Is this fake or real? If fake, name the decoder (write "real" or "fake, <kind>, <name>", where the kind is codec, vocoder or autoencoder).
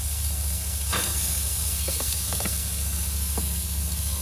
fake, codec, SNAC